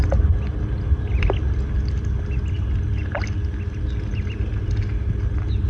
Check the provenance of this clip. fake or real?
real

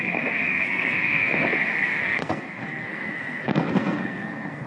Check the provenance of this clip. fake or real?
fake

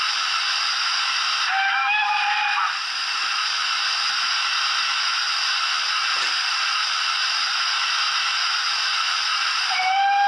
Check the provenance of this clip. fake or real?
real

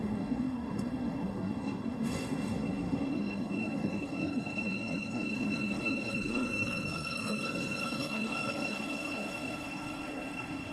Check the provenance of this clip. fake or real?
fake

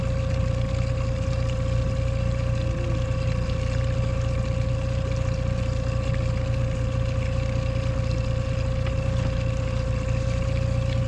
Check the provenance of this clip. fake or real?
real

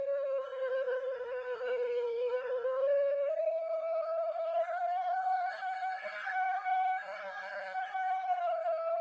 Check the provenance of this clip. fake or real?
fake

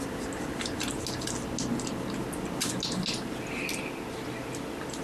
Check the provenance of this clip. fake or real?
real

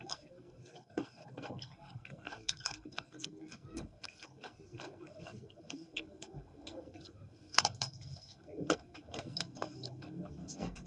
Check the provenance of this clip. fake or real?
fake